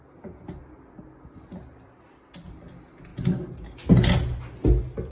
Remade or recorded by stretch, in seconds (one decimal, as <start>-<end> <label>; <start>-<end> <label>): 0.0-5.1 recorded